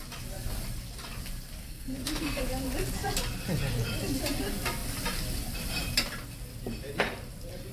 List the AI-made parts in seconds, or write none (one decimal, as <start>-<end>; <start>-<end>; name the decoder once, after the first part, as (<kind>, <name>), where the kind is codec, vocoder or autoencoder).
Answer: 1.6-2.4 (codec, SNAC)